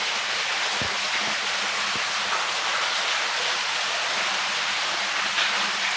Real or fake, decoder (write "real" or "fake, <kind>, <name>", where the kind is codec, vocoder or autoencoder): real